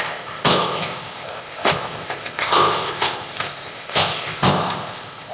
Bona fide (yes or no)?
no